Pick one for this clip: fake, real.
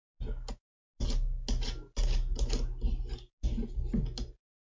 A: real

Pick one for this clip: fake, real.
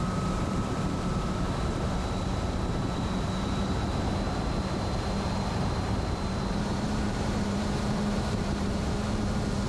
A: fake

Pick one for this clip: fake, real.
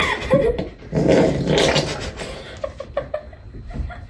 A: real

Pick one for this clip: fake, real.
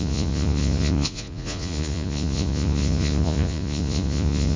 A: fake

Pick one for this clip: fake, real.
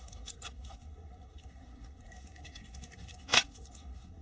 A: fake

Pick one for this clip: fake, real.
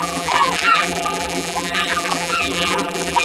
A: fake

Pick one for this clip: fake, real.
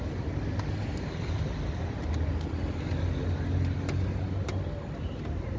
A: real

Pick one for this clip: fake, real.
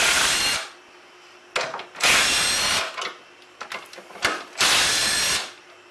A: real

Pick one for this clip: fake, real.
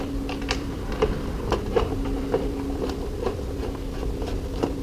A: fake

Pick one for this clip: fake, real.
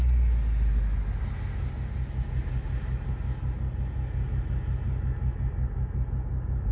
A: real